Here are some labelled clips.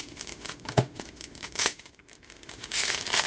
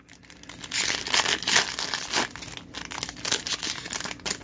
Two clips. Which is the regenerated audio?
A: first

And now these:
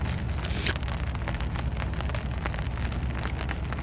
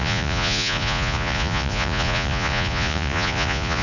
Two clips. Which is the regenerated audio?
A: second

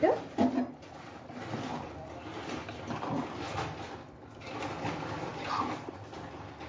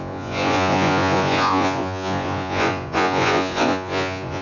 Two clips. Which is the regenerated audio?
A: second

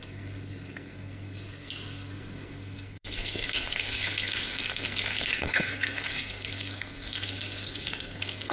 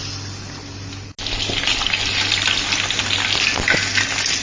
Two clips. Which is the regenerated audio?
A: first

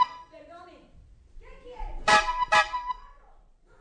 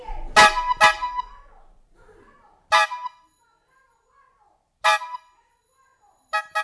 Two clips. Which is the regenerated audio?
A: first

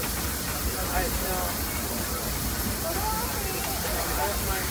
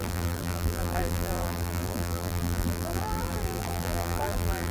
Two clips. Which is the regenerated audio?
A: second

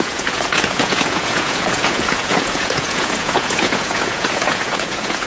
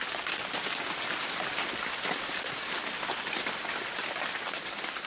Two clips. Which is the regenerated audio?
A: first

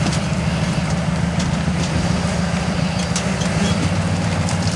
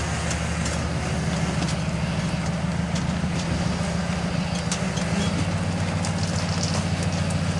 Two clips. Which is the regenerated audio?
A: first